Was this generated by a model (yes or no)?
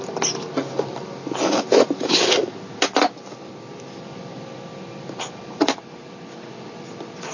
no